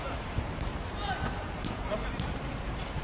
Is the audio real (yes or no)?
no